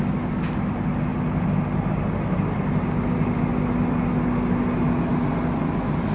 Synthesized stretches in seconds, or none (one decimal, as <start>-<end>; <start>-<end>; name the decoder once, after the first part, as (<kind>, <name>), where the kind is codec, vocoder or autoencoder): none